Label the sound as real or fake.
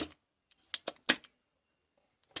real